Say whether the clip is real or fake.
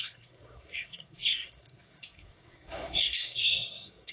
fake